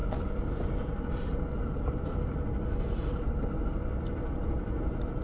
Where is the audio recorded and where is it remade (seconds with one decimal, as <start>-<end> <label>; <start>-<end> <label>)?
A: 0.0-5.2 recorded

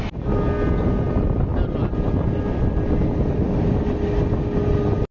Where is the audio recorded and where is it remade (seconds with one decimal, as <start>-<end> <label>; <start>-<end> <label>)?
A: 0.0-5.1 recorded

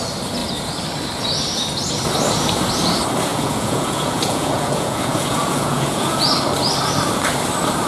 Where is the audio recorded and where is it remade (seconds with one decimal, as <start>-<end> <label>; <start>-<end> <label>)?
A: 0.0-3.3 recorded; 3.3-6.2 remade; 6.2-7.9 recorded

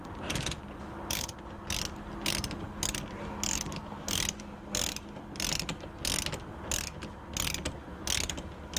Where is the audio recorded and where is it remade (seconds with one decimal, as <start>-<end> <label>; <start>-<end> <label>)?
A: 0.0-0.8 remade; 0.8-8.8 recorded

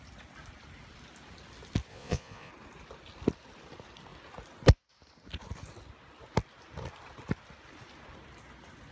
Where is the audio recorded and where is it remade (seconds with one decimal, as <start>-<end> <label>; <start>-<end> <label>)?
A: 0.0-1.9 recorded; 1.9-2.5 remade; 2.5-8.9 recorded

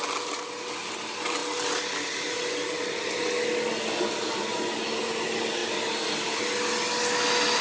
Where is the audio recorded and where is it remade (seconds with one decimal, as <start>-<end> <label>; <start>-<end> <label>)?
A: 0.0-7.6 recorded

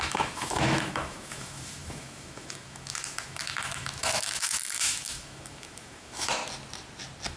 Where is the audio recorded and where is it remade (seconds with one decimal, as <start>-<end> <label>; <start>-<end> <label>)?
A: 0.0-6.4 remade; 6.4-7.4 recorded